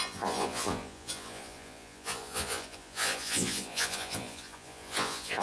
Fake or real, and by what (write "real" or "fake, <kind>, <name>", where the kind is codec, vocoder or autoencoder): fake, vocoder, Vocos